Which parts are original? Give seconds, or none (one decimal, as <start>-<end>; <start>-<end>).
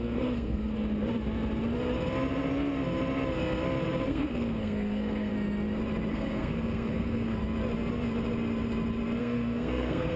0.7-4.1; 5.3-6.1; 7.4-9.2